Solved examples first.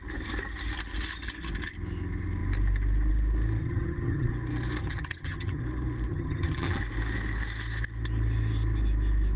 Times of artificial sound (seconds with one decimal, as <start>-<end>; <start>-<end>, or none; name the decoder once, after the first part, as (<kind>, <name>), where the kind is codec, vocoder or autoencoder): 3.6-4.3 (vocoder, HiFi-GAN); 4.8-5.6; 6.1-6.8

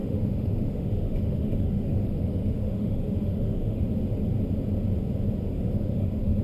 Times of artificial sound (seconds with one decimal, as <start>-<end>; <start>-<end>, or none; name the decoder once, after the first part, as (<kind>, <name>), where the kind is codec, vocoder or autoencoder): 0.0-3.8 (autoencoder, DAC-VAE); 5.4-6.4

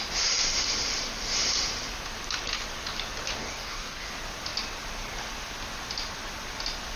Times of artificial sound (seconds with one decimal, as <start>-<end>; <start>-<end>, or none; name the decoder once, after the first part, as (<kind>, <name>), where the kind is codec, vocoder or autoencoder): 3.4-4.1 (codec, DAC)

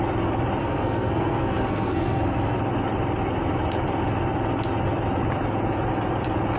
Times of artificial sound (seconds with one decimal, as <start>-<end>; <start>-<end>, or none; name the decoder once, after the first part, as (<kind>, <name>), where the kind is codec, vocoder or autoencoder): 0.6-2.6 (codec, SNAC)

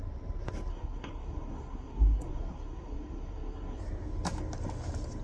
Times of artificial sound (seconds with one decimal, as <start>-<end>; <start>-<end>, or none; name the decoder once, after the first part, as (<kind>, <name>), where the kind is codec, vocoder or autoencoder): 0.7-3.8 (codec, SNAC)

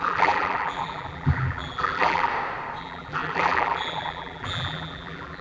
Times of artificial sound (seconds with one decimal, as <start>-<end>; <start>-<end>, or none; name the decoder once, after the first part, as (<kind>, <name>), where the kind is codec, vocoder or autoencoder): 0.0-2.3 (vocoder, BigVGAN v2); 2.8-5.4

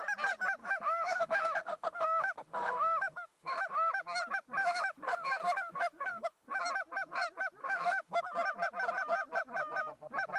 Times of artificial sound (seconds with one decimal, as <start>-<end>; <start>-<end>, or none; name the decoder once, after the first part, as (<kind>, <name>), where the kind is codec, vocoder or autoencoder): 0.6-3.9 (autoencoder, DAC-VAE); 4.6-6.6; 7.6-8.2